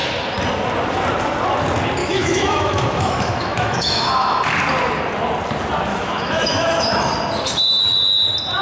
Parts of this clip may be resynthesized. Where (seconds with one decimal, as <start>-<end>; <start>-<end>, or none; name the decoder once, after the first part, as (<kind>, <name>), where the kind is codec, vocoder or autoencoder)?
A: 2.0-4.4 (autoencoder, DAC-VAE); 5.9-7.1